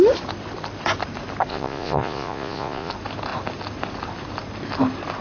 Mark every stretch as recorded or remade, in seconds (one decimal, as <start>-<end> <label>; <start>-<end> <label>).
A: 0.0-1.5 recorded; 1.5-2.9 remade; 2.9-5.2 recorded